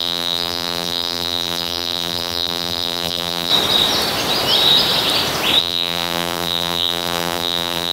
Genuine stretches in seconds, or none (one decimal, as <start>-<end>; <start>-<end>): 3.5-5.6